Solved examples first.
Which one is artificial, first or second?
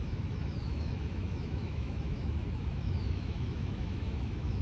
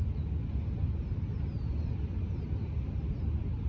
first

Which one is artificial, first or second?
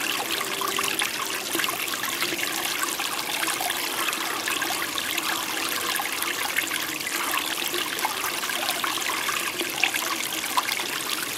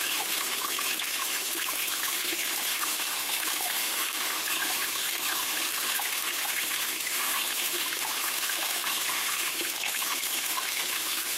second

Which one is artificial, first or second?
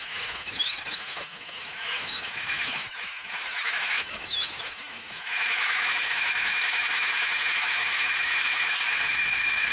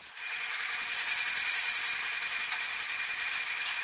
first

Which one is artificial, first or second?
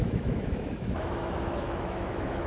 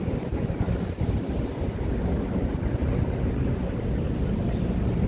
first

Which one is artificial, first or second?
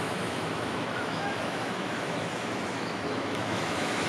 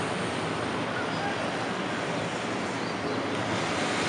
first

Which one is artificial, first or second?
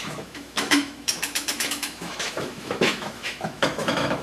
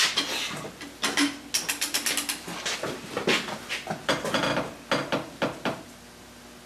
first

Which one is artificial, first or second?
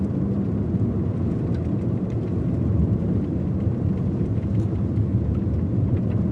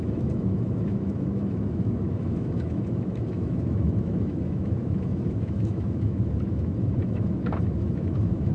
second